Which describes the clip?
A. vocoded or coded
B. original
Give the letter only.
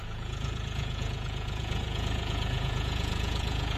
A